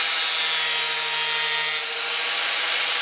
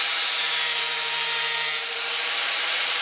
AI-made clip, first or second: second